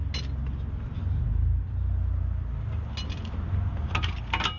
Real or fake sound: real